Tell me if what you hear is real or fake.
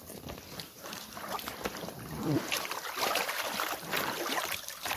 fake